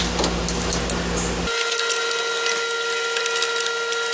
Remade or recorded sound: recorded